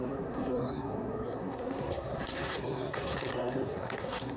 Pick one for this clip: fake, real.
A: fake